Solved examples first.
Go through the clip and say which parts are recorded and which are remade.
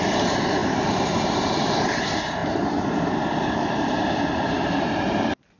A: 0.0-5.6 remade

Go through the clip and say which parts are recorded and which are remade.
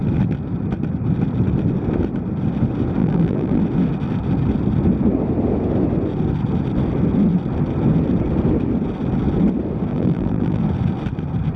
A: 0.0-3.0 recorded; 3.0-3.6 remade; 3.6-9.9 recorded; 9.9-10.6 remade; 10.6-11.6 recorded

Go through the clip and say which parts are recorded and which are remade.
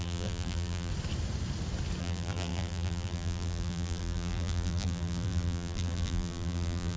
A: 0.0-0.9 remade; 0.9-2.0 recorded; 2.0-7.0 remade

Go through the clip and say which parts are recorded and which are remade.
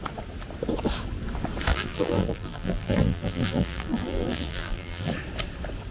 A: 0.0-1.7 recorded; 1.7-5.1 remade; 5.1-5.9 recorded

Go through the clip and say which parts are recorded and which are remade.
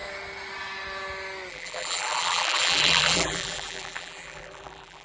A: 0.0-1.5 recorded; 1.5-5.0 remade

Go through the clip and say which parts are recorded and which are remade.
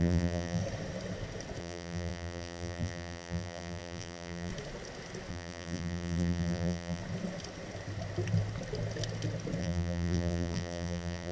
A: 0.0-0.6 remade; 0.6-1.6 recorded; 1.6-4.5 remade; 4.5-5.3 recorded; 5.3-7.0 remade; 7.0-9.6 recorded; 9.6-11.3 remade